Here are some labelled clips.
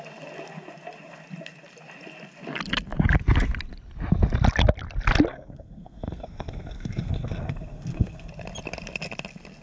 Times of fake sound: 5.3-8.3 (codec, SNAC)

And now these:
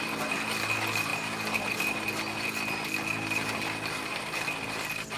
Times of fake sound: none

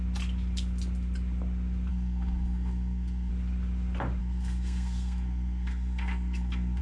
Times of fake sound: 1.9-3.3 (codec, SNAC); 4.2-6.8

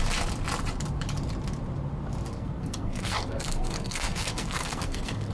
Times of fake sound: 2.3-5.3 (codec, SNAC)